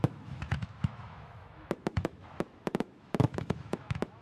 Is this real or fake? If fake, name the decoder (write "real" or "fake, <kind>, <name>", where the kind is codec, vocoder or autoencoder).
fake, autoencoder, DAC-VAE